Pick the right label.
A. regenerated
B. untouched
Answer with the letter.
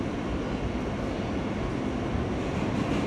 B